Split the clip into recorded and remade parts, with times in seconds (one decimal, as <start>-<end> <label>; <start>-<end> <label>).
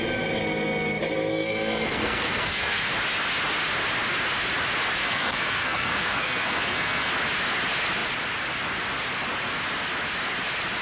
0.0-1.3 recorded; 1.3-2.9 remade; 2.9-5.0 recorded; 5.0-7.1 remade; 7.1-10.8 recorded